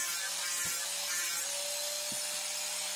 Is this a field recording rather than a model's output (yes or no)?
yes